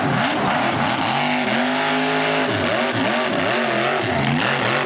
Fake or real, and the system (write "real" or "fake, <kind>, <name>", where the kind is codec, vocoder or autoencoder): real